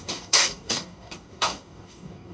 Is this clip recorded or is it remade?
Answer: remade